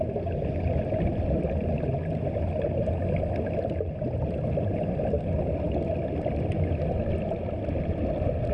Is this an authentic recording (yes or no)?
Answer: yes